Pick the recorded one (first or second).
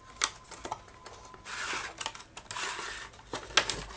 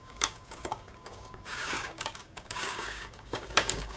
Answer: first